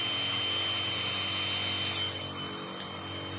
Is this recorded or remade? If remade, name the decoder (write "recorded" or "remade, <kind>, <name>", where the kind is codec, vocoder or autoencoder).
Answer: recorded